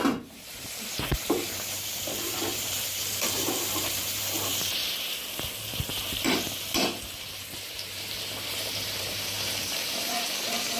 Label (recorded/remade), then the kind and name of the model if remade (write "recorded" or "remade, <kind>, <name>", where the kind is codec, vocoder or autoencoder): remade, vocoder, BigVGAN v2